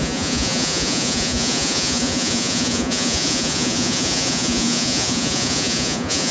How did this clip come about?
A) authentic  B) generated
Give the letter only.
B